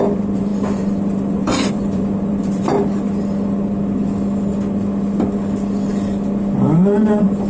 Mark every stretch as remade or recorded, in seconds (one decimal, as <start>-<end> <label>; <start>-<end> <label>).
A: 0.0-2.7 remade; 2.7-7.5 recorded